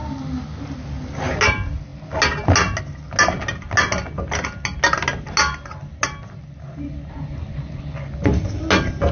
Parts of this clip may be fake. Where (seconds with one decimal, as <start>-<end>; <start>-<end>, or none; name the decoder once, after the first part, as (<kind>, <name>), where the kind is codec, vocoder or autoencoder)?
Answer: none